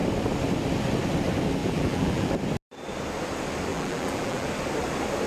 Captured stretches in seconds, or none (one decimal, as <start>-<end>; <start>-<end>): 0.0-1.6; 2.3-3.7; 4.5-5.3